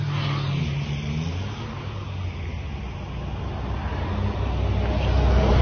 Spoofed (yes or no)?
no